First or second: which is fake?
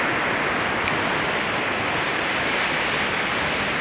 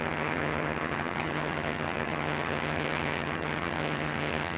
second